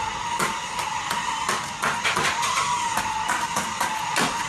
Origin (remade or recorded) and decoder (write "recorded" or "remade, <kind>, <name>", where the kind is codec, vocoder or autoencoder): recorded